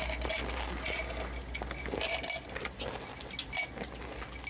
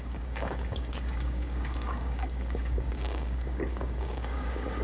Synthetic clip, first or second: second